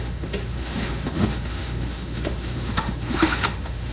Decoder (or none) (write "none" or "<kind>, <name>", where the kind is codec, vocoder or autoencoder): autoencoder, DAC-VAE